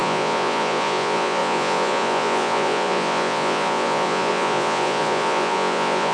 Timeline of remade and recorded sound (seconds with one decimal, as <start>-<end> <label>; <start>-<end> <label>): 0.0-6.1 remade